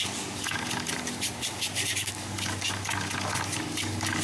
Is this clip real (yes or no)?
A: no